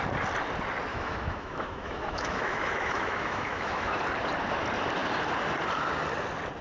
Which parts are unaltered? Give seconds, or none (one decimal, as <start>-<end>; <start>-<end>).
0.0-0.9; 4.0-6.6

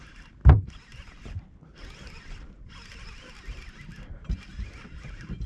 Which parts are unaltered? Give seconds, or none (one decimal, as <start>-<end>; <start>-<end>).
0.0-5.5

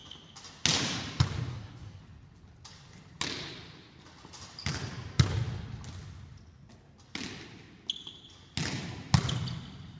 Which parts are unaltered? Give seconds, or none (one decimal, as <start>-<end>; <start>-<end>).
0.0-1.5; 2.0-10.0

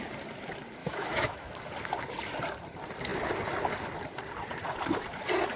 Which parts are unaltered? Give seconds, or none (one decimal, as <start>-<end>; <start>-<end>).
0.0-0.8; 1.5-5.6

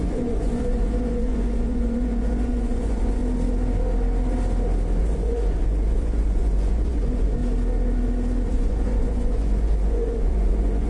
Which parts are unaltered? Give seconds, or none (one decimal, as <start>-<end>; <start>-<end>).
3.2-5.0; 7.4-8.5

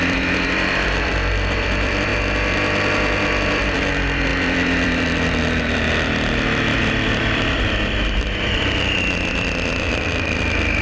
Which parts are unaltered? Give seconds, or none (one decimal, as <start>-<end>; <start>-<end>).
2.1-3.5

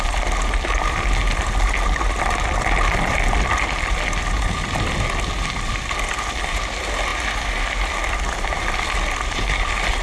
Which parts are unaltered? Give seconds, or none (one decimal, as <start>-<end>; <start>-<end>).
0.0-10.0

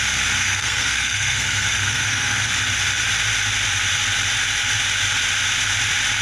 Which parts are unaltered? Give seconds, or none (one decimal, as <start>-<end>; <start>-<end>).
0.0-0.4; 2.5-6.2